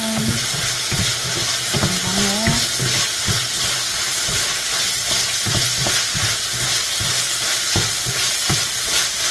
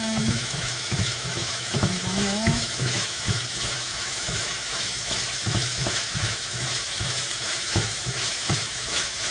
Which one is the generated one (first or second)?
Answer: second